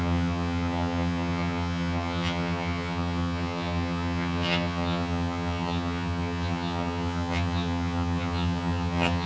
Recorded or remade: remade